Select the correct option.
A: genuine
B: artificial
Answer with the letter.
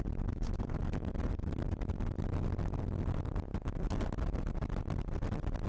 A